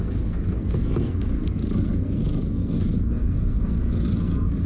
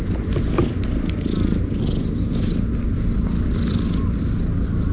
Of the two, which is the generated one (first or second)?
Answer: first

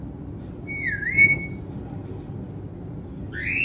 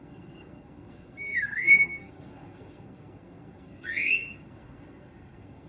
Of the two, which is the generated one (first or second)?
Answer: second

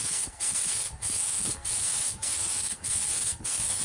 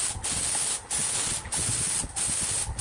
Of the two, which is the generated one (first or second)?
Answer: first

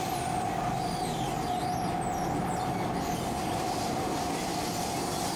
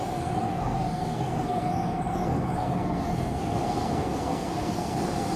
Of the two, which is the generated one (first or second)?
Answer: second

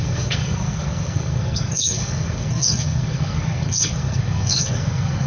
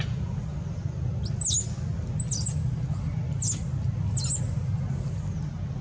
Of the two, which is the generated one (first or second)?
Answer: first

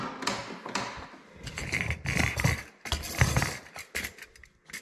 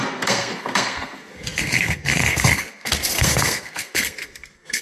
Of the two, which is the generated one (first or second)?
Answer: second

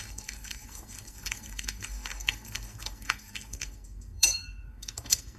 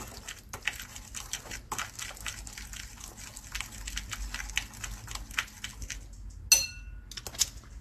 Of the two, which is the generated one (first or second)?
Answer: first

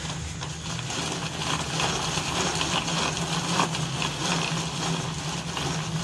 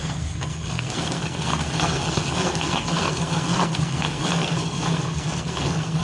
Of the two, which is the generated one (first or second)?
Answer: second